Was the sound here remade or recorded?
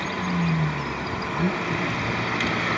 recorded